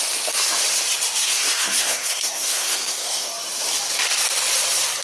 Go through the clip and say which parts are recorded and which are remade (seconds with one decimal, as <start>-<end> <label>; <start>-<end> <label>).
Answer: 0.0-1.2 recorded; 1.2-3.3 remade; 3.3-5.0 recorded